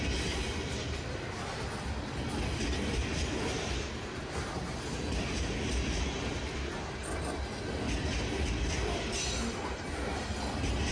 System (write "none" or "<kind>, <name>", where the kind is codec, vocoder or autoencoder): none